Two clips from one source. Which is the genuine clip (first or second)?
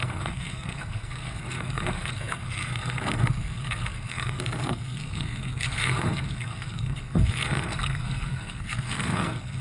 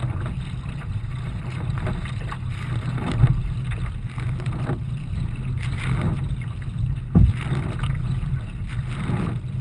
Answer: second